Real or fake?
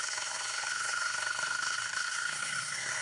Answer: fake